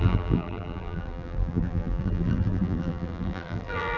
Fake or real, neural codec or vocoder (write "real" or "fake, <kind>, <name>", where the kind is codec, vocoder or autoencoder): fake, vocoder, BigVGAN v2